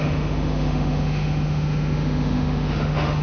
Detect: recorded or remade remade